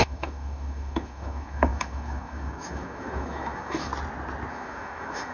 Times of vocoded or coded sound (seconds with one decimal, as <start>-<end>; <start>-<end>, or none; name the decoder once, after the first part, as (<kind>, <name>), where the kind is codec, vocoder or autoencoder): 0.0-3.9 (autoencoder, DAC-VAE); 4.5-5.3